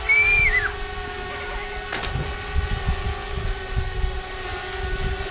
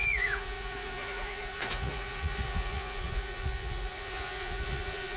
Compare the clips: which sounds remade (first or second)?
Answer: second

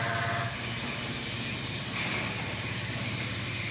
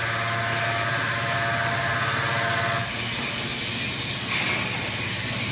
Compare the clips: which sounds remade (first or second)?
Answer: first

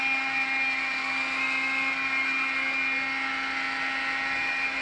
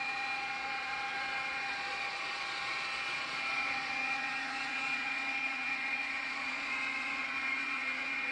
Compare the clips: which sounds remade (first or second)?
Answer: second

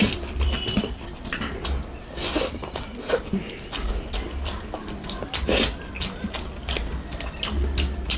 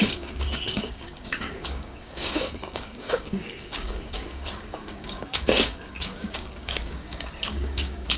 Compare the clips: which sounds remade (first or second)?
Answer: second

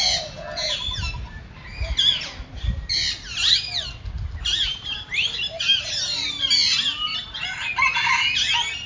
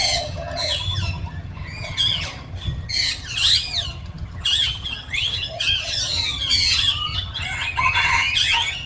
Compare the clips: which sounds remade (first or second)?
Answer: second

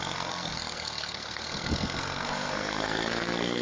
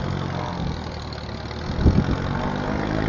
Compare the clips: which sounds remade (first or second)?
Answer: first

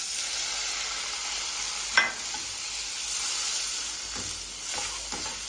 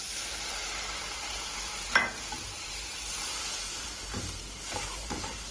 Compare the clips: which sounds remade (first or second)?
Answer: second